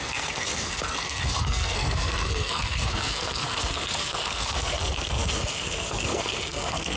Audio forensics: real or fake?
fake